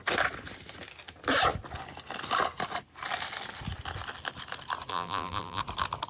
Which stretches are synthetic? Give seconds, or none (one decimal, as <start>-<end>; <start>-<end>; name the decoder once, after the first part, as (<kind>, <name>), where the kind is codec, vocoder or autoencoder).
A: 4.9-5.6 (vocoder, BigVGAN v2)